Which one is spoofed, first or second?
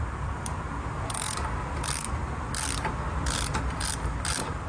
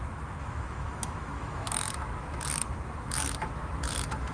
second